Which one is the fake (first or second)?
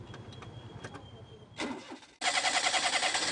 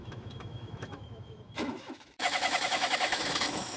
second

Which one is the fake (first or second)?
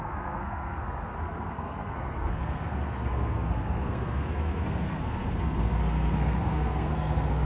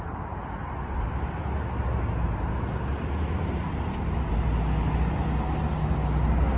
first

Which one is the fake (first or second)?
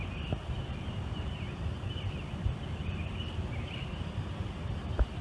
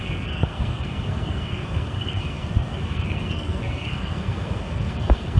second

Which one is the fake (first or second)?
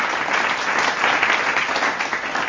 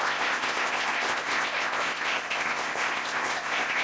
second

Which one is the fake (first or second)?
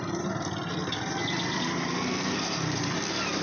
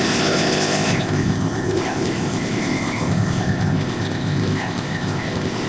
second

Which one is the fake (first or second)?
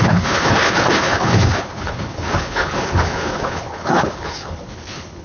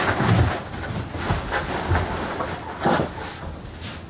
first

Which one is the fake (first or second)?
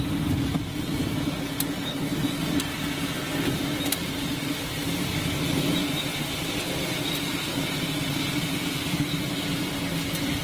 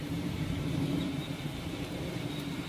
second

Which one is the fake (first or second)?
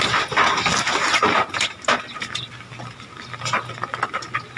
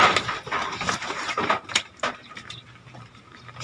second